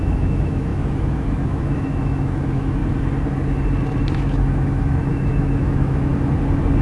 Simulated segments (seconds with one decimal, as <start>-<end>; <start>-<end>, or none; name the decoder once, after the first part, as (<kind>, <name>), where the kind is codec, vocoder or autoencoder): 0.0-2.8 (autoencoder, DAC-VAE); 4.0-6.1